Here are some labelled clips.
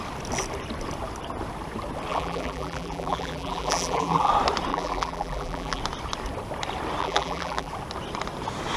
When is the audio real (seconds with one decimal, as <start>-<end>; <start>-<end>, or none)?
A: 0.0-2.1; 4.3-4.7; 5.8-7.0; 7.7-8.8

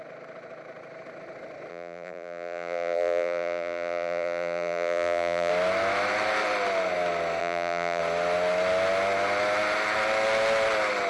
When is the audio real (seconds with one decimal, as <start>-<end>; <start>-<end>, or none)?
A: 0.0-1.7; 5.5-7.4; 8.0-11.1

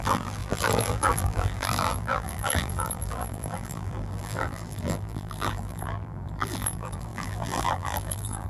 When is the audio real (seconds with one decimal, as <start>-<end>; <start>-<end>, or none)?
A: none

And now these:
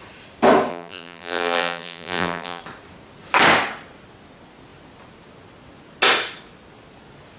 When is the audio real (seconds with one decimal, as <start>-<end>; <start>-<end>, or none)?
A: 0.0-0.7; 2.6-7.4